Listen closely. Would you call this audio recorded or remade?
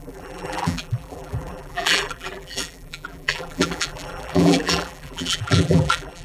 remade